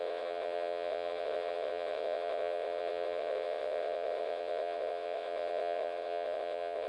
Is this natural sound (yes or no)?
no